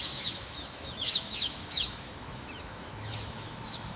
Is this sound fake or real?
fake